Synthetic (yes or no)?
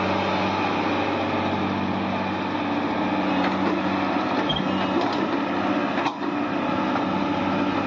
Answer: no